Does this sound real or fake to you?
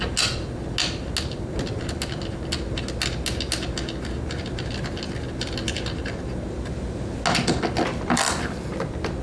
real